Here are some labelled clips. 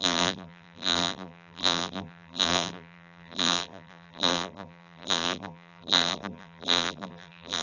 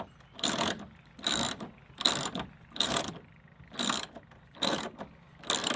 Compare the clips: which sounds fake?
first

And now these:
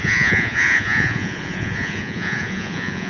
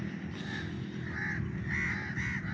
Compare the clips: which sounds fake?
first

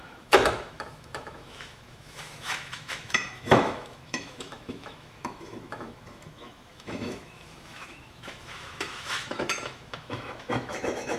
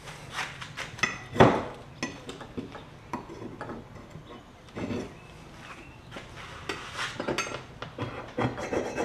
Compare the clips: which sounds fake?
first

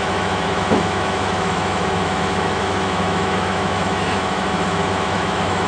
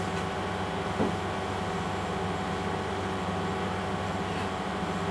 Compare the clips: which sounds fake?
first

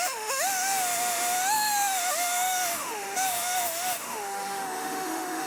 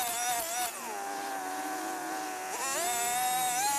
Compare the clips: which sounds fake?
first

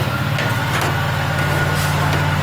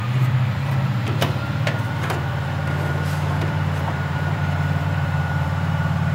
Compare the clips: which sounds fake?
second